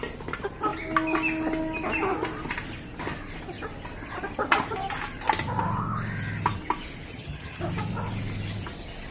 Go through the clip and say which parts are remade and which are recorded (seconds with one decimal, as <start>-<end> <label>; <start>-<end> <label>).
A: 0.0-7.1 recorded; 7.1-7.6 remade; 7.6-9.1 recorded